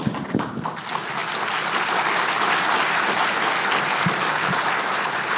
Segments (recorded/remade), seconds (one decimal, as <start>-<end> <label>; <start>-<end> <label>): 0.0-5.4 recorded